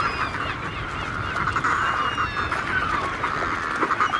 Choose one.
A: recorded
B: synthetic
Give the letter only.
A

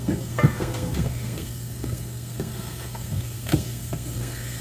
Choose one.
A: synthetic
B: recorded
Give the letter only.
A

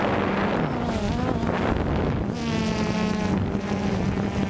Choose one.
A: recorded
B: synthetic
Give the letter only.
A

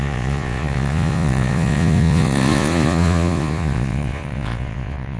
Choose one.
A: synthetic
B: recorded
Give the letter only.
A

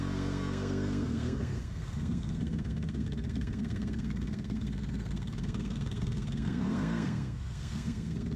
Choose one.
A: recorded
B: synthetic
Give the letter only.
B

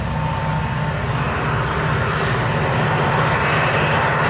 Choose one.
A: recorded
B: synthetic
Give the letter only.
A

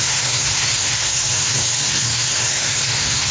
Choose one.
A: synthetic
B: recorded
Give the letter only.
A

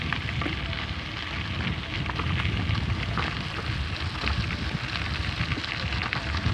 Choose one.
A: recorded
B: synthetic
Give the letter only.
A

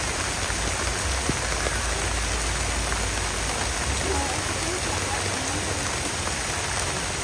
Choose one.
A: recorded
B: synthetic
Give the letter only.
A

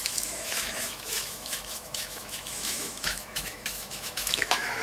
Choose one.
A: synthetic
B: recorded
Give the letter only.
A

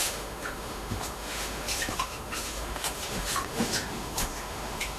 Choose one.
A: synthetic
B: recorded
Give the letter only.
A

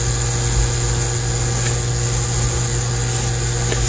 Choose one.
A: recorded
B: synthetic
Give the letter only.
A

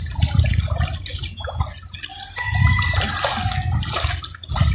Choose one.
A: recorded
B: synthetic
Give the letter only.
A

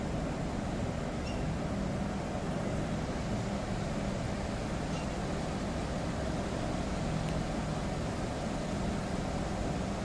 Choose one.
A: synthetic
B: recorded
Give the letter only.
B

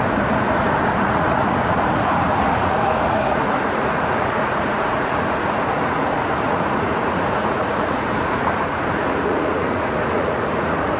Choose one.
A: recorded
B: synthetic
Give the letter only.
B